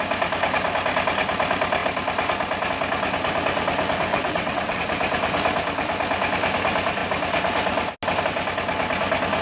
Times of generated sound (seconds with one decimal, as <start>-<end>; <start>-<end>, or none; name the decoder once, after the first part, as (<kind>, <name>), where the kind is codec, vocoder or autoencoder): 4.1-4.8 (vocoder, WaveNeXt)